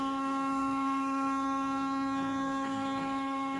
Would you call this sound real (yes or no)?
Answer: no